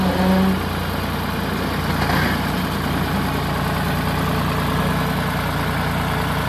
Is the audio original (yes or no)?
yes